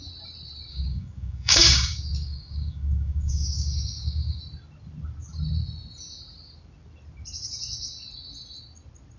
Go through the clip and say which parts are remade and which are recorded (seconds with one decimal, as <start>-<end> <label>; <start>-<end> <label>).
0.0-0.7 recorded; 0.7-4.4 remade; 4.4-9.2 recorded